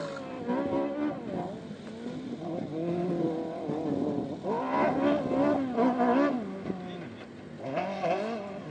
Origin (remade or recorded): recorded